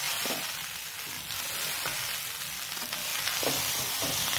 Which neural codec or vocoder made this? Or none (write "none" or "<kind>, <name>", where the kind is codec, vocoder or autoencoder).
none